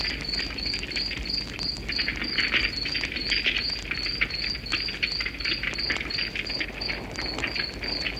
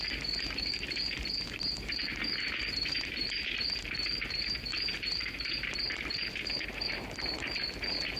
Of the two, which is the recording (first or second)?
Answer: first